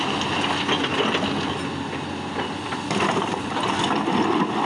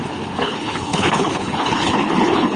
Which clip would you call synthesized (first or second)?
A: second